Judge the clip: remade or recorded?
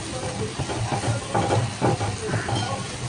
recorded